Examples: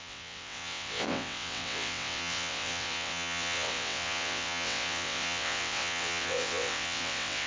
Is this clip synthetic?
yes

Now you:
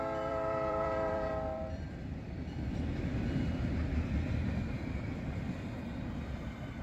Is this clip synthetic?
yes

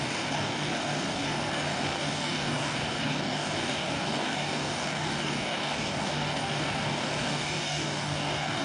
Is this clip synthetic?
yes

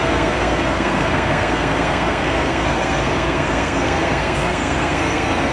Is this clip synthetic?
yes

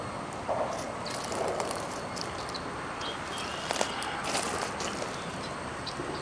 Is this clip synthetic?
no